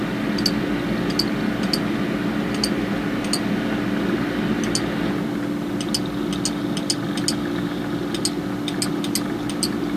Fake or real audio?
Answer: real